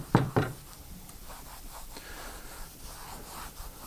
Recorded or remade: remade